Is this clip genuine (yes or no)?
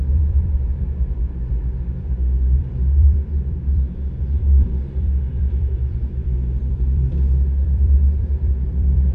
no